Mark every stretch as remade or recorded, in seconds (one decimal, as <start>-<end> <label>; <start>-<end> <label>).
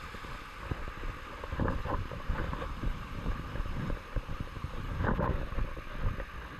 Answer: 0.0-1.8 recorded; 1.8-5.3 remade; 5.3-6.6 recorded